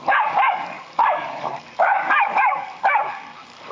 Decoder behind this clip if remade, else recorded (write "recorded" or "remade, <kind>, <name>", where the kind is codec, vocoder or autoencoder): remade, codec, DAC